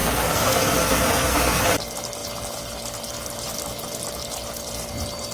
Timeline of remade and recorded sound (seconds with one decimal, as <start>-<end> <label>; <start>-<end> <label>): 0.0-1.6 remade; 1.6-5.3 recorded